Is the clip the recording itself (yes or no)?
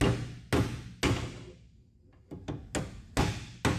yes